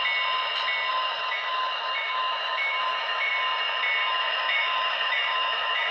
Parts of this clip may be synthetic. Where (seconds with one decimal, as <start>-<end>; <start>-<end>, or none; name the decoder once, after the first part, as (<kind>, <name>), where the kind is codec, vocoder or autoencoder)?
0.9-3.3 (autoencoder, DAC-VAE); 4.0-5.9